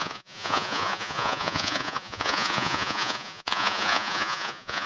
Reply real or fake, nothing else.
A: fake